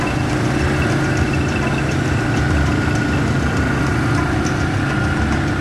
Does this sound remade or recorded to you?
recorded